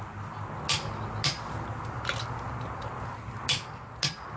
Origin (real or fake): real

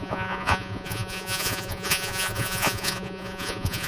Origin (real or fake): fake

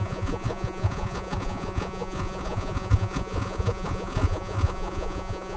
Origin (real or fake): fake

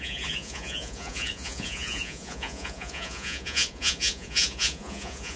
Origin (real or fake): fake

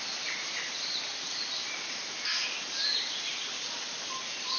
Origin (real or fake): real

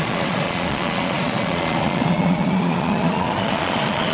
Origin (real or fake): fake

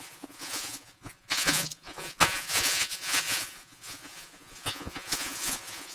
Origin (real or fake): fake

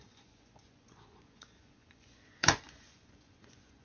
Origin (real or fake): fake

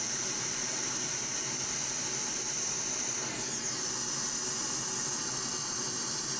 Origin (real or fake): real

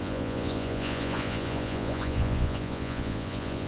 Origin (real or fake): fake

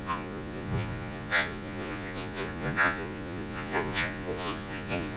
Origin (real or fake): fake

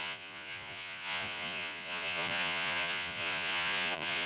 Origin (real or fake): fake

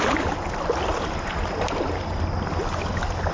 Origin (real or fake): real